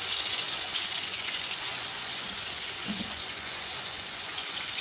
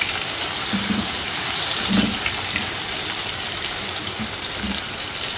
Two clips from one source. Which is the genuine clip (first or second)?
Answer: second